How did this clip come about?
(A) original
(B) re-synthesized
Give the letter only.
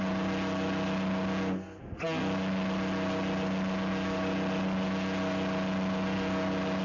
A